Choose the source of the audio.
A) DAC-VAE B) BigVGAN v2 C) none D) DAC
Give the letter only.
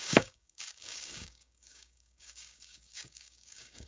D